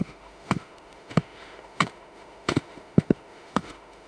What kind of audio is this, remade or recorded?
remade